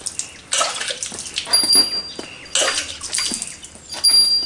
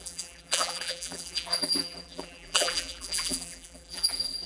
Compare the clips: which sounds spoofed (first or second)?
second